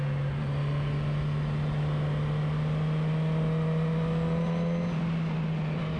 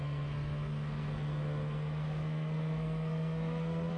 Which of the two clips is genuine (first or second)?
first